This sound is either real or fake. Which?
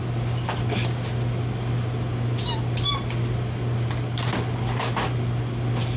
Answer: real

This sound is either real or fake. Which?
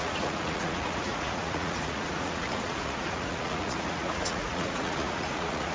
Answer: fake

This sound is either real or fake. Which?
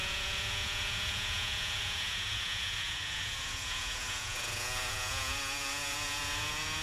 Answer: fake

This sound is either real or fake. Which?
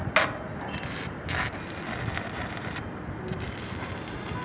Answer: real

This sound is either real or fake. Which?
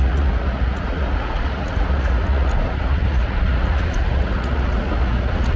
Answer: fake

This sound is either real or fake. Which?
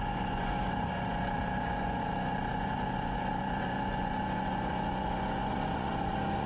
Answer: fake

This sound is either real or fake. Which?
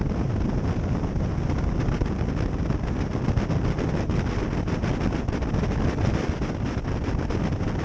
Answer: real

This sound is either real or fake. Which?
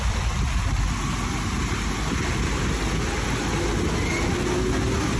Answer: real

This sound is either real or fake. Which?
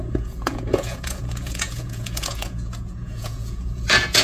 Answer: fake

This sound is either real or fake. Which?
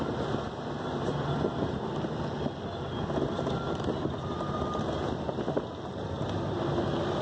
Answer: real